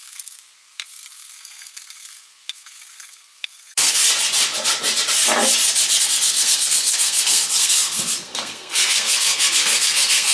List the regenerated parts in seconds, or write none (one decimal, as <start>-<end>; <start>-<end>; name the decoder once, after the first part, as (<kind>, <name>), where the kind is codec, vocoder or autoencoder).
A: 0.0-4.0 (codec, SNAC); 6.0-10.3